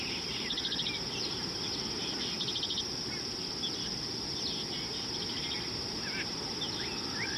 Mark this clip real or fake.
real